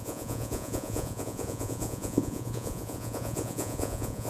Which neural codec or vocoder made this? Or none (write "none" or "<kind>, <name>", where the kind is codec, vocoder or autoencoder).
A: vocoder, Vocos